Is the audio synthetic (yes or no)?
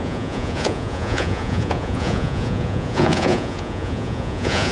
yes